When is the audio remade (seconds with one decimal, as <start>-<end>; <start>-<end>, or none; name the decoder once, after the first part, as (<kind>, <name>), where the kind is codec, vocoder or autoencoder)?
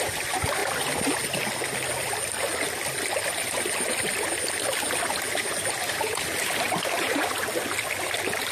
5.4-7.3 (vocoder, BigVGAN v2)